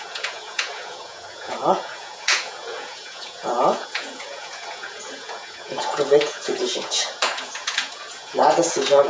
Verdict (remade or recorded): remade